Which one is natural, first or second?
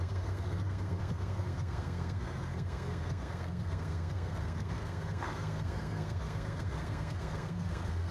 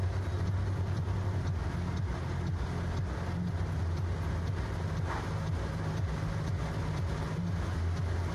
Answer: second